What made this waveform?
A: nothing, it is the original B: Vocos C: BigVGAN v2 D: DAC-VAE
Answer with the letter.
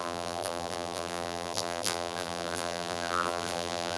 C